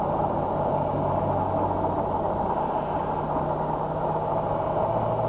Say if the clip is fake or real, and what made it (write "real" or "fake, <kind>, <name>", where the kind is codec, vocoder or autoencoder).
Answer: real